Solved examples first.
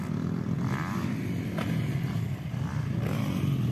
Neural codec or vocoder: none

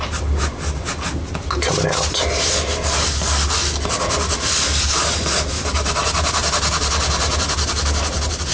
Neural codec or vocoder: none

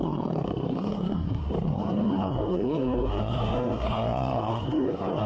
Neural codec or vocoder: codec, SNAC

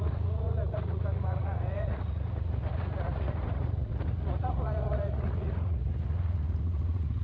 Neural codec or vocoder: vocoder, Vocos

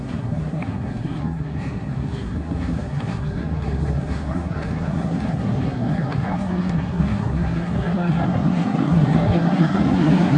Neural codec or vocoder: codec, SNAC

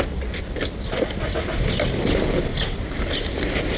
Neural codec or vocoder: none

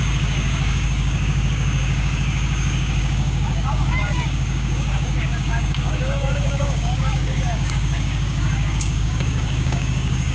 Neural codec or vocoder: codec, DAC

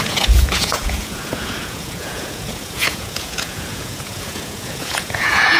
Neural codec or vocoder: vocoder, Vocos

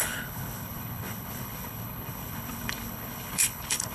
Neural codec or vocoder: codec, HILCodec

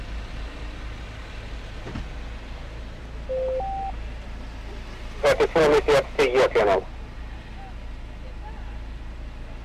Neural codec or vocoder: none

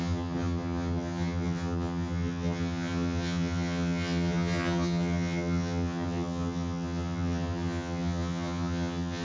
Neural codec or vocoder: vocoder, HiFi-GAN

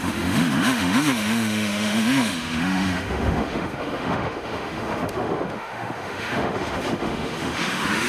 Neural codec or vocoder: autoencoder, DAC-VAE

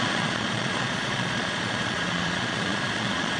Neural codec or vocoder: vocoder, Vocos